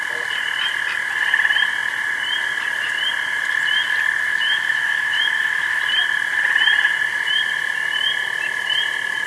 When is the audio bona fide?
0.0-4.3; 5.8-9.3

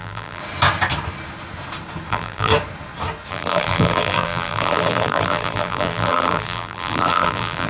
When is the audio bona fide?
0.4-2.1; 2.5-3.3

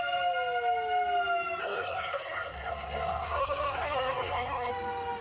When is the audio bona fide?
0.0-1.6; 4.7-5.2

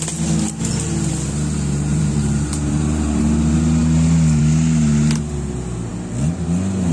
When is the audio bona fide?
0.0-1.9; 3.2-6.9

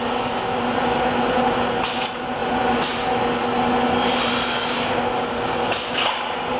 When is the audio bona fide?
0.0-6.6